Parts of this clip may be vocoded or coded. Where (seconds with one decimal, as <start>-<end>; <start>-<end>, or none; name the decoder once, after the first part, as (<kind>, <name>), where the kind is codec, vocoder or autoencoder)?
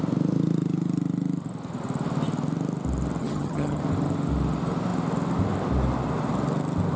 3.2-3.8 (vocoder, HiFi-GAN)